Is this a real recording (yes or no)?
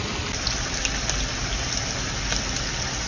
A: yes